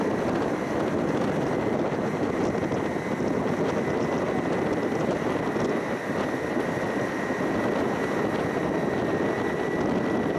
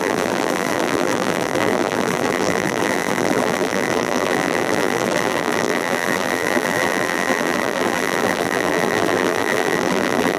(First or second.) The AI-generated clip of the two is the second